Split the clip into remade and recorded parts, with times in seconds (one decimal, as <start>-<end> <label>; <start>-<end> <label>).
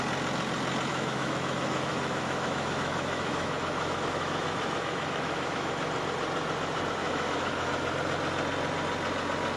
0.0-0.9 recorded; 0.9-5.7 remade; 5.7-7.0 recorded; 7.0-7.9 remade; 7.9-9.6 recorded